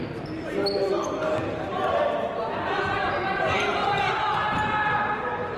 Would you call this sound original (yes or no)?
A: yes